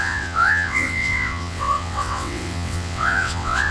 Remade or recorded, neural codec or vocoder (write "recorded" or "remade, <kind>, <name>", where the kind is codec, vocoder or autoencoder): remade, vocoder, WaveNeXt